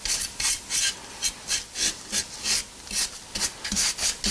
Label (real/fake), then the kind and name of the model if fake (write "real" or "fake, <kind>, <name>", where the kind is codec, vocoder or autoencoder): real